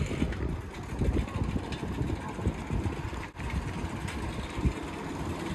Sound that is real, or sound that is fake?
real